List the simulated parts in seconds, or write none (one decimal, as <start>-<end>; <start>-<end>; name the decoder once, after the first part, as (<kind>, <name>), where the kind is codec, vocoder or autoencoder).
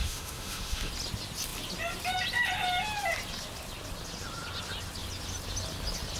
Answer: 0.0-0.9 (autoencoder, DAC-VAE)